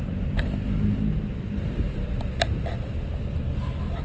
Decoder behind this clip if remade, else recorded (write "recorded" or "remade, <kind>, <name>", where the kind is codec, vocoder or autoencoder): recorded